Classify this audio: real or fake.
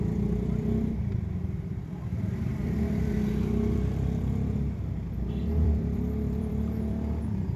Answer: fake